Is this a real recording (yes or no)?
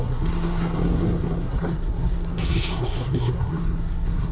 no